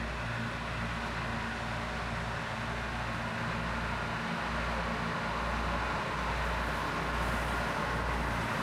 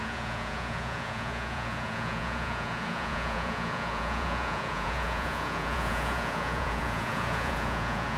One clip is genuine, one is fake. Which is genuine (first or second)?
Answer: first